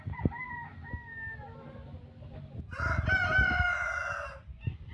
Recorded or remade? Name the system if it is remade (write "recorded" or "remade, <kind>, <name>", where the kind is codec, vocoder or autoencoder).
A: recorded